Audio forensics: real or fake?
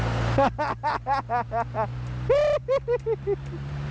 real